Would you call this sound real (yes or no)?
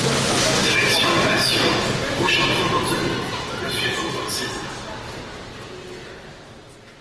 yes